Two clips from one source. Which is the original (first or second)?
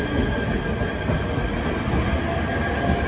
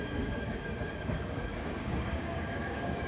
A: first